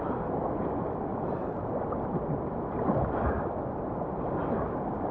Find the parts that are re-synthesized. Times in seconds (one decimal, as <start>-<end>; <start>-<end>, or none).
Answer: none